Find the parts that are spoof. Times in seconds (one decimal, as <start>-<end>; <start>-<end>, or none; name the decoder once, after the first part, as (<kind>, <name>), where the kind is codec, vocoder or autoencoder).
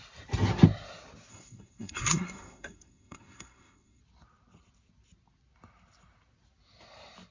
1.3-4.0 (codec, SNAC)